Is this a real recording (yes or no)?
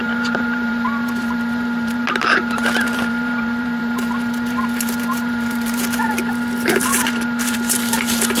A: no